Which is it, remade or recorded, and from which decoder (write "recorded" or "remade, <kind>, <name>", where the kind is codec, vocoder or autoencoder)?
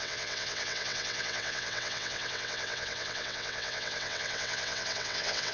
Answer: remade, vocoder, WaveNeXt